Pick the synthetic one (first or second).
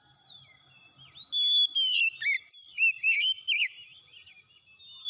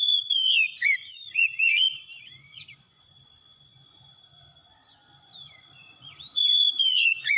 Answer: second